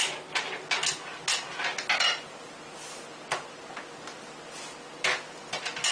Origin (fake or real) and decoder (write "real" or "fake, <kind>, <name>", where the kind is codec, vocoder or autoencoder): real